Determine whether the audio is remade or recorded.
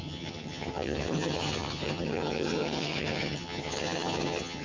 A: remade